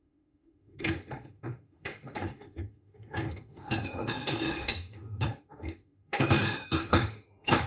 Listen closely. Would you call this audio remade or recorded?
remade